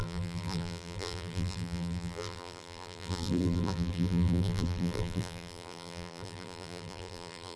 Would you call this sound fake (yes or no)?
yes